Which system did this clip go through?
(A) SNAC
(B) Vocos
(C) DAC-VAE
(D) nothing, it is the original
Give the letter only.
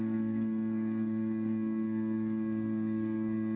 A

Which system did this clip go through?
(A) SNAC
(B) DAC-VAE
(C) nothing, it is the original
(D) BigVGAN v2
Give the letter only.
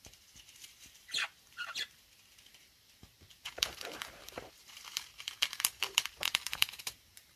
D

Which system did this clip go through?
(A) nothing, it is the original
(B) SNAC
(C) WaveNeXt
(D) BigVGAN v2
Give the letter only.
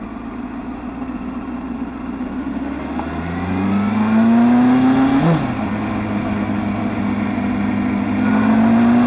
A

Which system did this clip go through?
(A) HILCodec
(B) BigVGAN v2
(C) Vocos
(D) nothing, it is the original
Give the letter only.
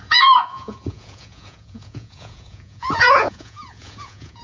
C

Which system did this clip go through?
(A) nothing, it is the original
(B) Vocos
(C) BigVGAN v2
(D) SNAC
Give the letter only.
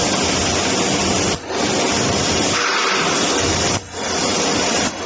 A